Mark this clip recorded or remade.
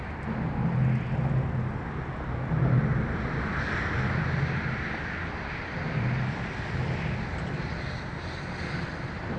recorded